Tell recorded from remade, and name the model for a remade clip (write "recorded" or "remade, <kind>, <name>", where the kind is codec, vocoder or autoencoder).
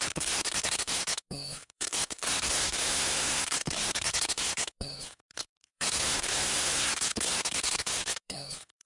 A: remade, codec, SNAC